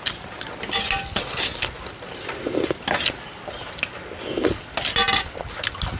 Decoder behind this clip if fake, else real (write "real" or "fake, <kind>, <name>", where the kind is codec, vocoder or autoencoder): real